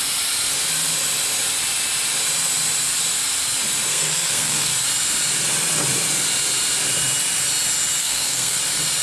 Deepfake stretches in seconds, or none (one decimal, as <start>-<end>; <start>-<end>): 3.9-4.7; 8.0-8.6